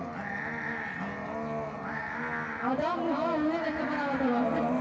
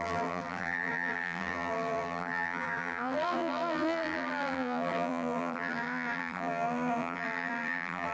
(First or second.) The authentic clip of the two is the first